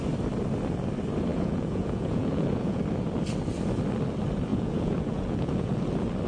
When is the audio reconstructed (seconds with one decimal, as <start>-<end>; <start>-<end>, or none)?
1.3-2.8; 4.5-5.8